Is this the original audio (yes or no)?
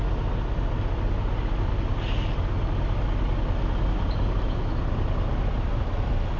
yes